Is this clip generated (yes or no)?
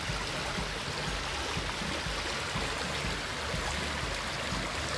no